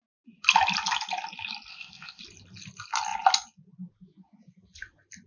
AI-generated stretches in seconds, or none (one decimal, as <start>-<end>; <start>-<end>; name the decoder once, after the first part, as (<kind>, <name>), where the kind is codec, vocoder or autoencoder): 1.7-2.2 (codec, ZipCodec)